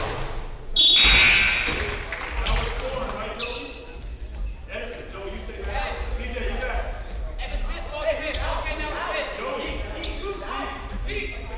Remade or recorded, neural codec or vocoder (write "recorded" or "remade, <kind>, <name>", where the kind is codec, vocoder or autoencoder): recorded